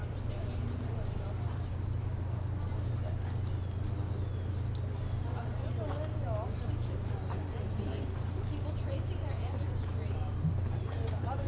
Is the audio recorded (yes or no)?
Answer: yes